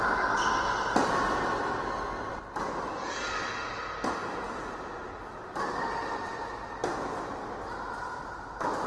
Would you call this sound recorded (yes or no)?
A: yes